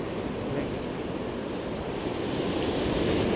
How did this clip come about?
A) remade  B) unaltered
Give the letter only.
B